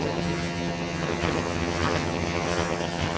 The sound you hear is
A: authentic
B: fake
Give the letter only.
B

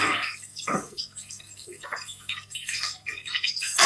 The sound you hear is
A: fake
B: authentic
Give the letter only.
A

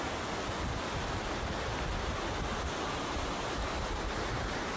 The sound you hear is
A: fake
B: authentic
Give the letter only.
B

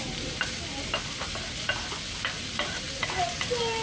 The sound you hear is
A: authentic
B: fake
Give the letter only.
A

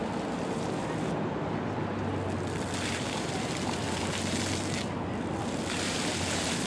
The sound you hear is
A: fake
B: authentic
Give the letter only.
B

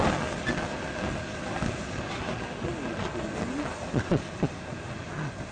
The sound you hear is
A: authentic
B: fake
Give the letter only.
A